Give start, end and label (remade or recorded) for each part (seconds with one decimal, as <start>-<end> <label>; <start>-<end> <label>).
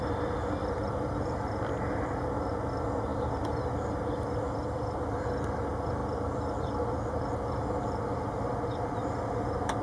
0.0-9.8 recorded